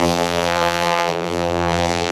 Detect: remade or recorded remade